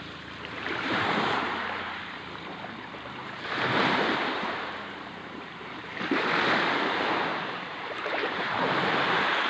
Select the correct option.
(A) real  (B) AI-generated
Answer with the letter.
B